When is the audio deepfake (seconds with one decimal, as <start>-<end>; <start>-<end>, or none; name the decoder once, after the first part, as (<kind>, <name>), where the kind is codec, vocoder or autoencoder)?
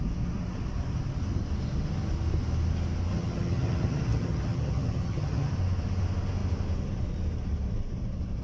3.1-5.5 (vocoder, HiFi-GAN)